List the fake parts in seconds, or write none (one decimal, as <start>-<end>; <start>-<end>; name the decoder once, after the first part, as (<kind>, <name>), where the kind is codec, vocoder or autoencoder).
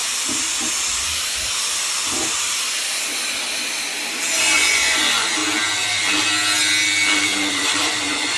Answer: 4.4-5.4 (vocoder, Vocos); 7.5-8.4